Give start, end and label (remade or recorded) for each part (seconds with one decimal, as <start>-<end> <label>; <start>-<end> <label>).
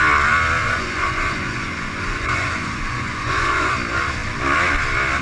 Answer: 0.0-0.6 recorded; 0.6-3.7 remade; 3.7-5.2 recorded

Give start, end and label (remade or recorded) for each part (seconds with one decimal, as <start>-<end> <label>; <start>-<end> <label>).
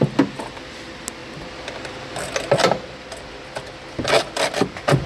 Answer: 0.0-5.1 recorded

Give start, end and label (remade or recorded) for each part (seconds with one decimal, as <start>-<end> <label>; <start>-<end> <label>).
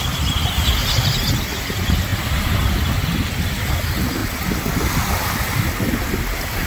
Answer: 0.0-6.7 recorded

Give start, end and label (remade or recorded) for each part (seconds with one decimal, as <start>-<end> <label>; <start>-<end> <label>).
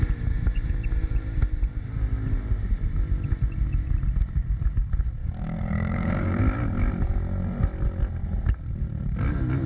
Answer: 0.0-5.2 recorded; 5.2-6.4 remade; 6.4-9.7 recorded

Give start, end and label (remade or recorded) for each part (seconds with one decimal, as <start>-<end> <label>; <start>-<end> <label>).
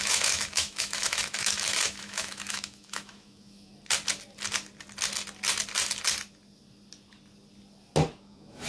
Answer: 0.0-3.7 remade; 3.7-8.2 recorded; 8.2-8.7 remade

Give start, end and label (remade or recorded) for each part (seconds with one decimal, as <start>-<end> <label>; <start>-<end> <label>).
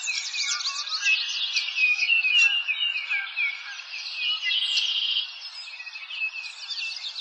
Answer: 0.0-1.8 recorded; 1.8-2.3 remade; 2.3-7.2 recorded